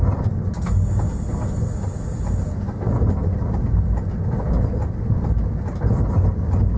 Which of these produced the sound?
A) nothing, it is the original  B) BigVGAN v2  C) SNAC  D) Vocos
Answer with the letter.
A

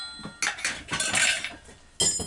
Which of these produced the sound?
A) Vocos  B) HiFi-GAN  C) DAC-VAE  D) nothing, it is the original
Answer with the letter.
D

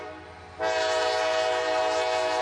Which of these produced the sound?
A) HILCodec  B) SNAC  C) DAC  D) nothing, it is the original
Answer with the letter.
D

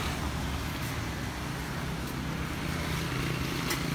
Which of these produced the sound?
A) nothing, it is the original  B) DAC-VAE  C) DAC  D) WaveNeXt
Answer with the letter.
A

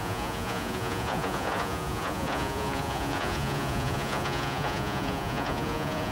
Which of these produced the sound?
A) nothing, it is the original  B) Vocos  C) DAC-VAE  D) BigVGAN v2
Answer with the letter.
B